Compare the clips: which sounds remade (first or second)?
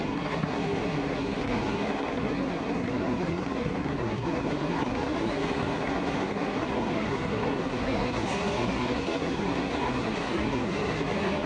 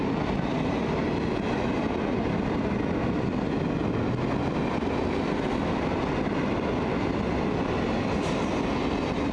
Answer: first